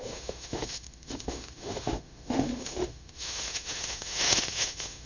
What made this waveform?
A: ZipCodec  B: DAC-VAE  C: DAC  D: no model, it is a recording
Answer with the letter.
B